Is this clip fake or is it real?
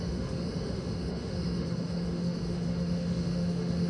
fake